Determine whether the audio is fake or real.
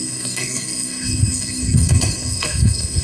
fake